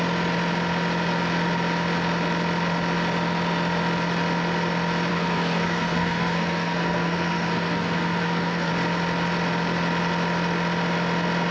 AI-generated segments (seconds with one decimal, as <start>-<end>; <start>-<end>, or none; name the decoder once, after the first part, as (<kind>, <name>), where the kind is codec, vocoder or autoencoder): 5.1-8.7 (codec, SNAC)